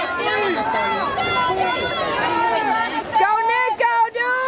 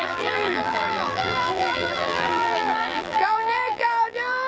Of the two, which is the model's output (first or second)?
second